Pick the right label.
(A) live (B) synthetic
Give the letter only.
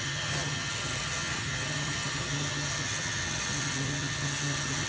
B